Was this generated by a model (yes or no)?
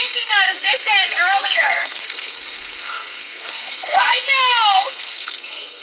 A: yes